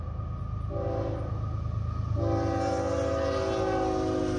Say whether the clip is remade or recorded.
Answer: recorded